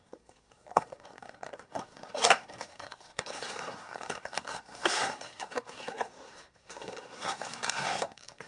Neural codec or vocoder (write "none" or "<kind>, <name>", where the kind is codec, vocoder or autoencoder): codec, SNAC